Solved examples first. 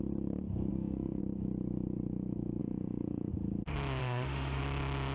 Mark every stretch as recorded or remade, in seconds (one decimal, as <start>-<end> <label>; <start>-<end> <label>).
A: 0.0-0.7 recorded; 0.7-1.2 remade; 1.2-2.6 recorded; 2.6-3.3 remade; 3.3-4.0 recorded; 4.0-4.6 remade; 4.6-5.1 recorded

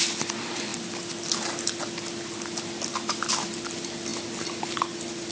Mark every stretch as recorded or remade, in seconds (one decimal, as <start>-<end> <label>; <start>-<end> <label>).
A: 0.0-5.3 recorded

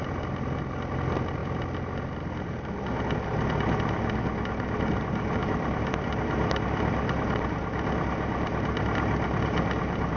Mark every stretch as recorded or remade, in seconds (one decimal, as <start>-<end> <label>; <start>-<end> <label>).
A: 0.0-1.4 recorded; 1.4-1.9 remade; 1.9-5.4 recorded; 5.4-6.5 remade; 6.5-10.2 recorded

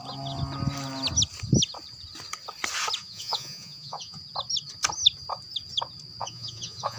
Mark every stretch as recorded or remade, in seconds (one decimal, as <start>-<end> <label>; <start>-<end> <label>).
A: 0.0-3.0 recorded; 3.0-4.2 remade; 4.2-6.2 recorded; 6.2-7.0 remade

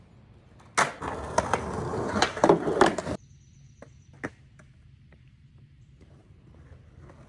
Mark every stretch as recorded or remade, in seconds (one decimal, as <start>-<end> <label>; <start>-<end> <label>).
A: 0.0-1.9 recorded; 1.9-6.3 remade; 6.3-7.3 recorded

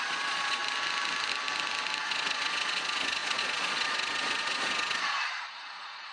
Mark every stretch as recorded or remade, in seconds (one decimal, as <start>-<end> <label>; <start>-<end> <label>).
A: 0.0-0.6 remade; 0.6-2.0 recorded; 2.0-6.1 remade